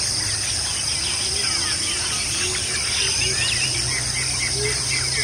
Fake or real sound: real